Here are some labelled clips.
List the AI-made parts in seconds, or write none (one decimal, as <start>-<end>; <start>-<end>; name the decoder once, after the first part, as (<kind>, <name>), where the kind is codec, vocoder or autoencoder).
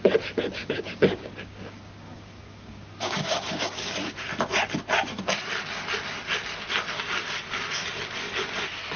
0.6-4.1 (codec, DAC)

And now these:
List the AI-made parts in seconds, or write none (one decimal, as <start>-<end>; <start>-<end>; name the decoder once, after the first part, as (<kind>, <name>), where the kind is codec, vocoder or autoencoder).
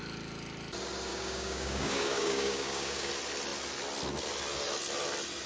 1.1-3.1 (codec, DAC)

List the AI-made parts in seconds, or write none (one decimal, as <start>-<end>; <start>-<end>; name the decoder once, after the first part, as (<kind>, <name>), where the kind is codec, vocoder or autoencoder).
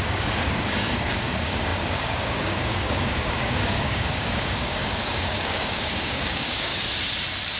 0.0-6.7 (codec, DAC)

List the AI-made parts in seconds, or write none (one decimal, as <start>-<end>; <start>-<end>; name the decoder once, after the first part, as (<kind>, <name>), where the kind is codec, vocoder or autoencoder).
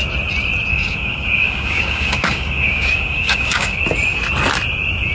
0.7-3.8 (codec, DAC)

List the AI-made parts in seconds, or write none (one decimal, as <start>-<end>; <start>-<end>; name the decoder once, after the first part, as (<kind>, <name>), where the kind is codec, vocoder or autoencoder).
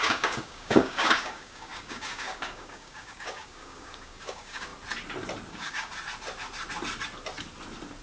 0.0-4.7 (codec, DAC); 5.5-5.9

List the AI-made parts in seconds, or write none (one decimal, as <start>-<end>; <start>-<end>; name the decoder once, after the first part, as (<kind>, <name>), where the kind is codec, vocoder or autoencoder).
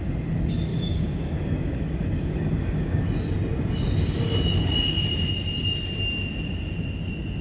0.7-3.0 (codec, DAC)